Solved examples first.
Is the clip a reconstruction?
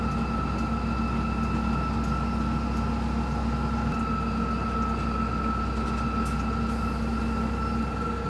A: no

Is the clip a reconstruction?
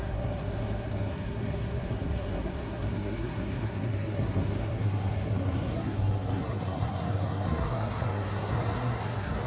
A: yes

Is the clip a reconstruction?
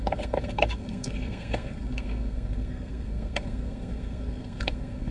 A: yes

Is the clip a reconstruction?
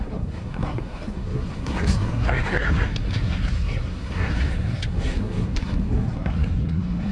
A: yes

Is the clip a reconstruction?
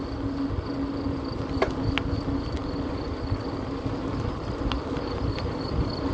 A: no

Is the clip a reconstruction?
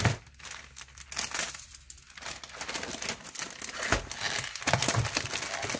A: no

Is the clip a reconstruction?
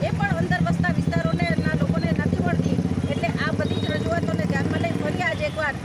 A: yes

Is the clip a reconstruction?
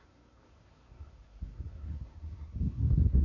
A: yes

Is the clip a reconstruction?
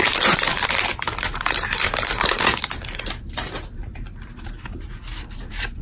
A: yes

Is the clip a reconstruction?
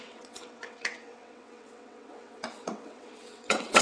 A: yes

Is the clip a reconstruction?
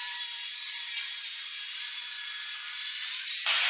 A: yes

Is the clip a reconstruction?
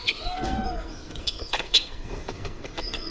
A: yes